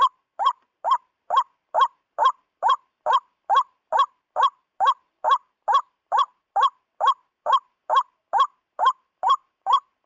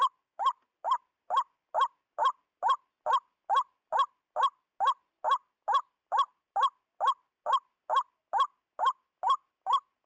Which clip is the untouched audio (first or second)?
second